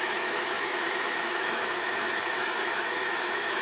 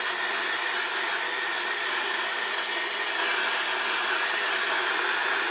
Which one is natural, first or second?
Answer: second